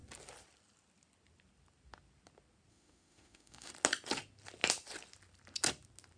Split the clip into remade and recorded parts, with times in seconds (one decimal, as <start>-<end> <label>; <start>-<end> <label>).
0.0-2.7 recorded; 2.7-3.7 remade; 3.7-6.2 recorded